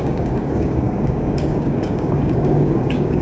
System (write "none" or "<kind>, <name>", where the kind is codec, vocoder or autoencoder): codec, DAC